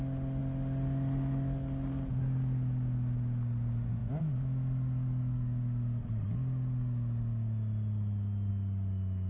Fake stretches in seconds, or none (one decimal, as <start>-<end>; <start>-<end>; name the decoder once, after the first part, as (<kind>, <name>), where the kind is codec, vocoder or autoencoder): none